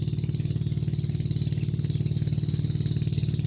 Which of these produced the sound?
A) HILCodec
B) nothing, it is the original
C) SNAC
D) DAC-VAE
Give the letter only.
B